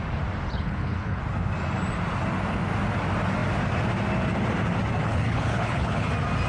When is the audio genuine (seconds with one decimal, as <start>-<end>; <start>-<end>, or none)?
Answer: 0.0-0.5; 1.2-5.0; 6.1-6.5